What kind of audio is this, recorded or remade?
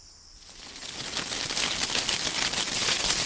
recorded